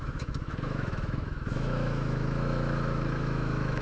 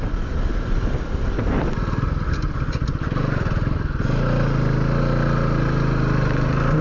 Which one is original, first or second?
second